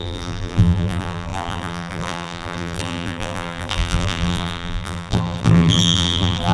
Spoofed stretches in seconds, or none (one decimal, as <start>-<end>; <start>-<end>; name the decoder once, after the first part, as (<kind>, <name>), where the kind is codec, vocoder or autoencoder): 0.0-6.5 (vocoder, BigVGAN v2)